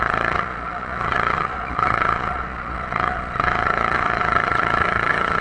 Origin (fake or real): fake